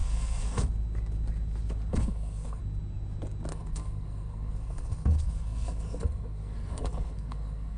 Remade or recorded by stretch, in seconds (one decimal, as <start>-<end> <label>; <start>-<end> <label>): 0.0-0.7 remade; 0.7-1.9 recorded; 1.9-2.6 remade; 2.6-3.5 recorded; 3.5-7.8 remade